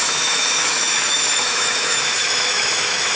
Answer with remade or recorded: remade